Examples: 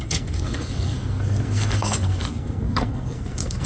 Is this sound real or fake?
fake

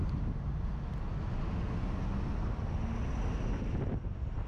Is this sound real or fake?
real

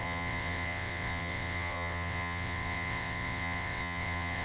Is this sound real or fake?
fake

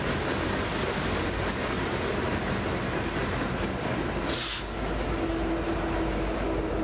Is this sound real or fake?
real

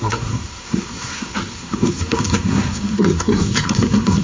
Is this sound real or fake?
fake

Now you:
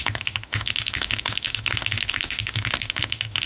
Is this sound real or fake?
fake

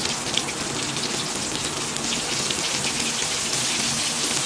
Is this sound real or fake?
real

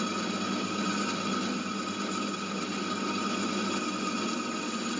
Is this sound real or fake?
real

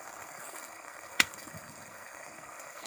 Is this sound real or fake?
fake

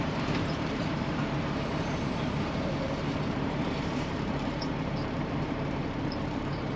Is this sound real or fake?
fake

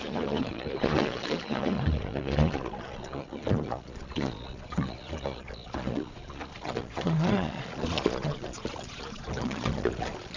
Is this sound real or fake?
fake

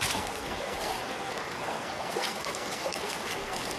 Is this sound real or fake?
fake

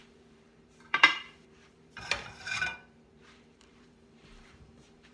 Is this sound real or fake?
fake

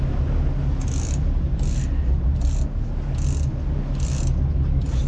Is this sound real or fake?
real